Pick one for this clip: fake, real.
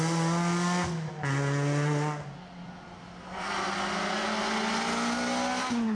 real